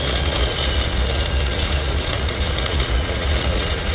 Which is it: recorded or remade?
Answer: remade